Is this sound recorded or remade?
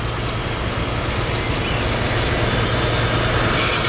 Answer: recorded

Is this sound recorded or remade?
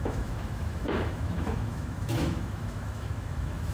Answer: remade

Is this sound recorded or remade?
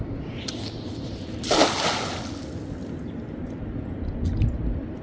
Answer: recorded